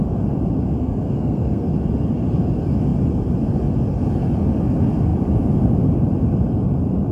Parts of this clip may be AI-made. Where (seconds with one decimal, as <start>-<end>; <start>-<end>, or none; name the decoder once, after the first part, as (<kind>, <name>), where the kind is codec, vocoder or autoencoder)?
0.8-1.7 (codec, SNAC)